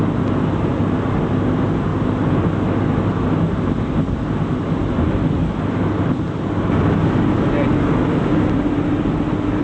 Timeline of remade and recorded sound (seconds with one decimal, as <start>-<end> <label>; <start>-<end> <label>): 0.0-9.6 recorded